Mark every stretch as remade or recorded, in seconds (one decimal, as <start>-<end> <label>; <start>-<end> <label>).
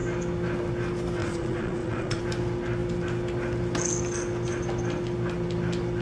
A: 0.0-1.2 recorded; 1.2-2.2 remade; 2.2-6.0 recorded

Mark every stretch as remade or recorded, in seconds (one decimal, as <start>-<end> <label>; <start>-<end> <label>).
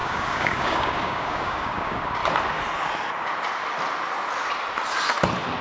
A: 0.0-2.2 remade; 2.2-5.6 recorded